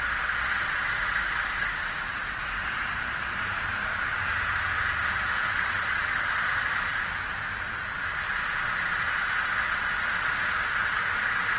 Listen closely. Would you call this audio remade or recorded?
recorded